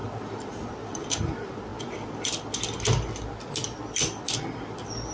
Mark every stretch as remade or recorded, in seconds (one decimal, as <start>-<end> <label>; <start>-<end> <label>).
0.0-5.1 recorded